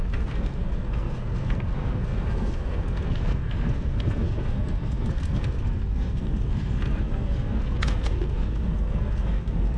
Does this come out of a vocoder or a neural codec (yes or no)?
yes